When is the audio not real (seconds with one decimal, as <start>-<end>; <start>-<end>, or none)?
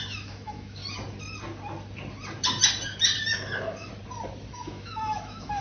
0.0-0.8; 3.3-3.9; 4.5-5.6